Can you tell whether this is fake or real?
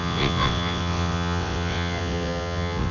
fake